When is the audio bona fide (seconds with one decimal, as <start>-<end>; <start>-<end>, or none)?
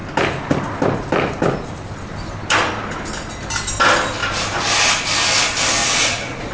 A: 0.0-5.8